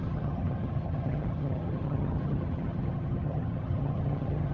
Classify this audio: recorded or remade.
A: remade